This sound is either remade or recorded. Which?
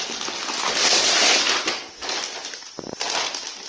recorded